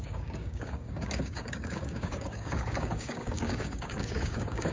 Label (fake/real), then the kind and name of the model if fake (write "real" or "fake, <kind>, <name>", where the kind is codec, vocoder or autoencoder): fake, codec, DAC